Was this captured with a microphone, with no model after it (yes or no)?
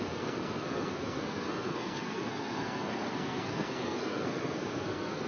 no